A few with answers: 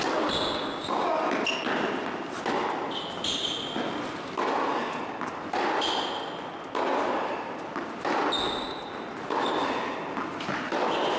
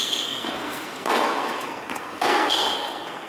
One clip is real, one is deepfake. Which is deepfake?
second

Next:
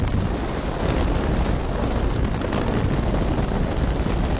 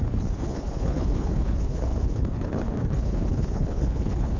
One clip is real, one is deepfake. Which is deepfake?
second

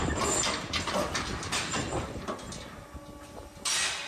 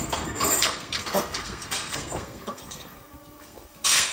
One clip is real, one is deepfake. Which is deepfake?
second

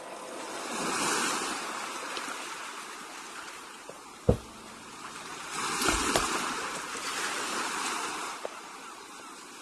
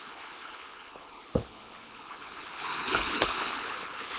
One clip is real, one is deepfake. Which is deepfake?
second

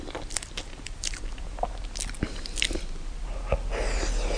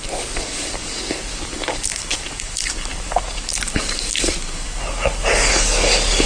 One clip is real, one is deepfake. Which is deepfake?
second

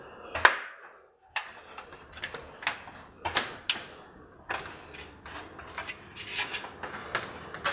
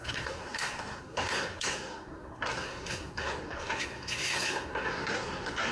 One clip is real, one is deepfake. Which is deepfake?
second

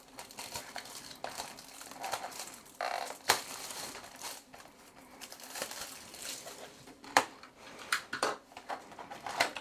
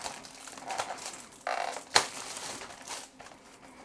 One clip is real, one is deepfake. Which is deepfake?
first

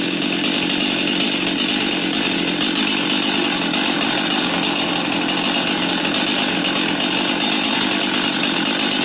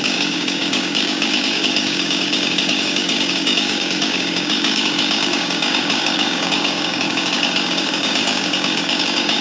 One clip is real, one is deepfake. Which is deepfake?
second